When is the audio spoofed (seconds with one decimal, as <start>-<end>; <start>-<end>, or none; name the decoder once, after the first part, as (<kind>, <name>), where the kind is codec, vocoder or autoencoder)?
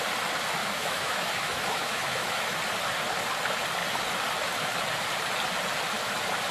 0.6-2.6 (autoencoder, DAC-VAE)